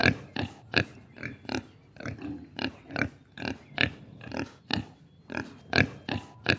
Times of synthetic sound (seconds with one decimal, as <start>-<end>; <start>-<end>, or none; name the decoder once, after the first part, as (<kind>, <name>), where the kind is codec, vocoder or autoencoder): none